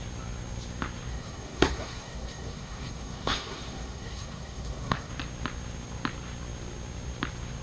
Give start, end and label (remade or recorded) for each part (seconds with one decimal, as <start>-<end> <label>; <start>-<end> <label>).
0.0-1.1 recorded; 1.1-5.1 remade; 5.1-7.6 recorded